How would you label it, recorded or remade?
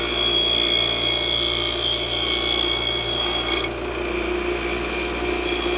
recorded